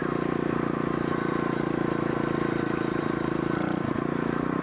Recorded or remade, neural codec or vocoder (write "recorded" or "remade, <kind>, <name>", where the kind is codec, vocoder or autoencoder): remade, vocoder, BigVGAN v2